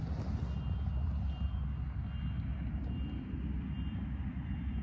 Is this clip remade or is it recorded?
recorded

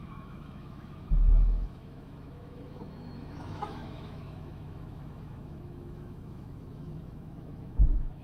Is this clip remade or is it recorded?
remade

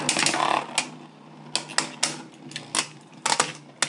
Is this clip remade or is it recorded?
recorded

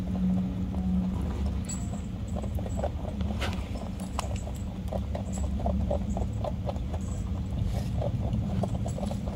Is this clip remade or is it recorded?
recorded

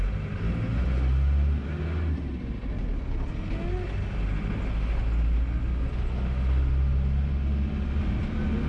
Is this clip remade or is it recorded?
recorded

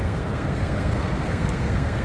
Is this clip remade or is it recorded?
remade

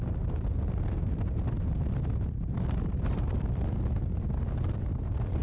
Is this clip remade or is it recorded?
recorded